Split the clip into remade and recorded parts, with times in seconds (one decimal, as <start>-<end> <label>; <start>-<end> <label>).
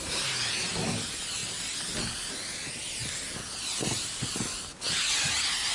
0.0-5.7 recorded